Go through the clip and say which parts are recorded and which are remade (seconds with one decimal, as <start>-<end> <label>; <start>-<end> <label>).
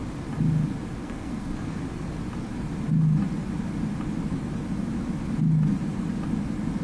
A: 0.0-1.0 recorded; 1.0-1.8 remade; 1.8-6.8 recorded